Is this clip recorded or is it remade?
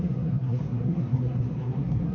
remade